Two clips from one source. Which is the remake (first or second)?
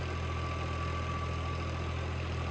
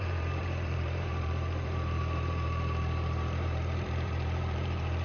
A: second